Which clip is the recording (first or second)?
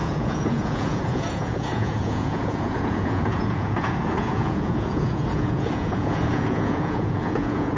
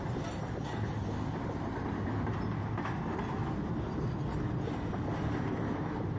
second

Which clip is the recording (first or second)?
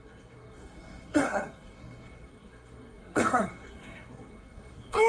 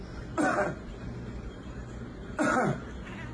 second